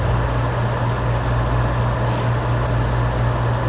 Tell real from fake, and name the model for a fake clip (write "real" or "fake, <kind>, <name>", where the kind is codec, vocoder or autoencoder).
real